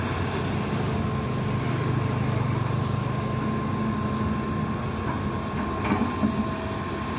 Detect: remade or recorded recorded